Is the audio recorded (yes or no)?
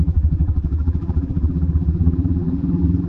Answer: no